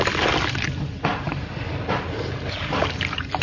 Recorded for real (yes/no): yes